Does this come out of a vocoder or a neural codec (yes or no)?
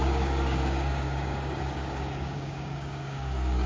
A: yes